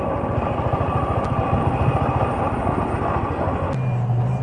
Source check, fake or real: real